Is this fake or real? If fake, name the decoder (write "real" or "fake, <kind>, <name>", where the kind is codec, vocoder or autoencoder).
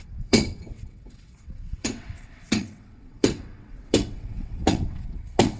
fake, vocoder, WaveNeXt